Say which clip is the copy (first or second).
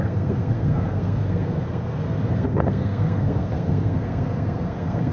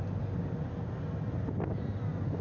first